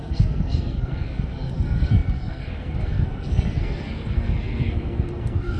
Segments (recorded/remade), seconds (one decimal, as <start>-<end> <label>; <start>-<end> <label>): 0.0-5.6 remade

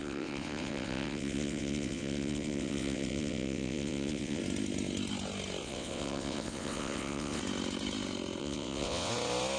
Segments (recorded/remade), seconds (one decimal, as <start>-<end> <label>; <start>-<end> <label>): 0.0-4.4 remade; 4.4-5.6 recorded; 5.6-7.4 remade; 7.4-8.4 recorded; 8.4-9.1 remade; 9.1-9.6 recorded